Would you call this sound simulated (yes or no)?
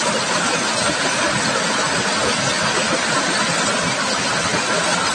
no